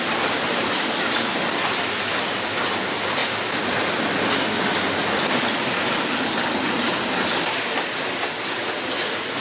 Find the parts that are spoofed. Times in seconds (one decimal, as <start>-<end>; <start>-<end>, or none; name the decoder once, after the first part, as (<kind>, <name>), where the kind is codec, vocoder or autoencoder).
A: 8.6-9.4 (vocoder, Vocos)